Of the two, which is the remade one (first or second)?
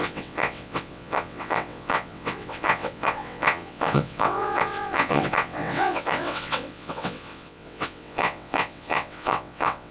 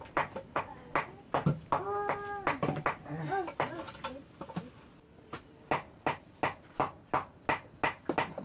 first